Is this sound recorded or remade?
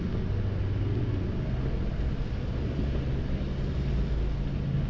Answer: recorded